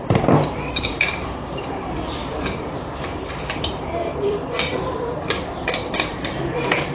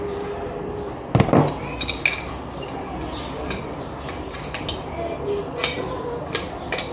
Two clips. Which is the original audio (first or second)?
second